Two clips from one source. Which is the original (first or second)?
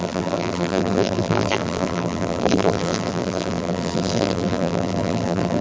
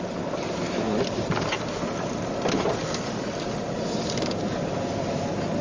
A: second